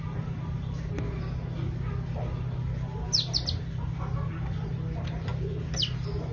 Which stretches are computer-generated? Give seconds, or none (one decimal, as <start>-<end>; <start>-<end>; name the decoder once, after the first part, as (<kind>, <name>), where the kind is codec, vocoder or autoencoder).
none